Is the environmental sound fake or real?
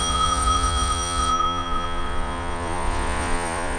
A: fake